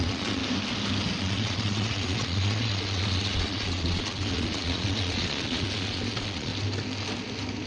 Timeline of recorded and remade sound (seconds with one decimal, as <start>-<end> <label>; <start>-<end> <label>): 0.0-0.4 remade; 0.4-1.2 recorded; 1.2-6.5 remade; 6.5-7.7 recorded